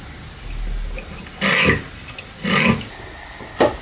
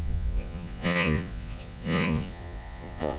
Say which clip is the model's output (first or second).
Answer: second